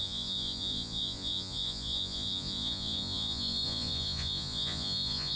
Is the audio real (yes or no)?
no